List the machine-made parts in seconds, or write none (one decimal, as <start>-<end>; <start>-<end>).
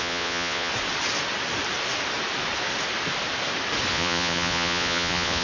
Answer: 0.0-0.7; 3.9-5.4